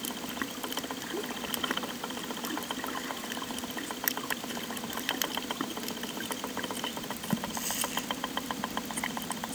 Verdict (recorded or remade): recorded